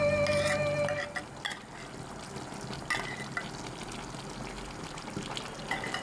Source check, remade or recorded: recorded